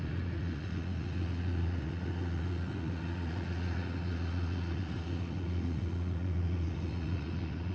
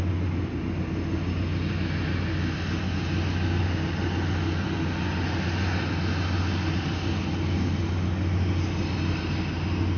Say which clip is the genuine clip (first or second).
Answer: second